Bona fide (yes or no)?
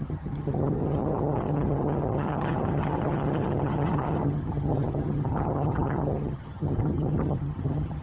no